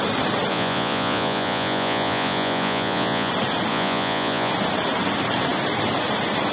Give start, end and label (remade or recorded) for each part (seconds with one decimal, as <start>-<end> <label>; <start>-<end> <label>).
0.0-0.5 recorded; 0.5-3.3 remade; 3.3-3.7 recorded; 3.7-4.5 remade; 4.5-6.5 recorded